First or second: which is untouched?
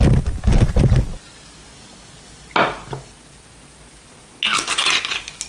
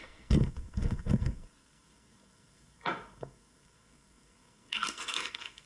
first